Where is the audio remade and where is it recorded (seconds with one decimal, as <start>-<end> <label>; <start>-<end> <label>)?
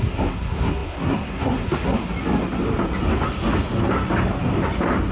0.0-2.0 remade; 2.0-5.1 recorded